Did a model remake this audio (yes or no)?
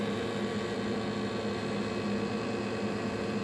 no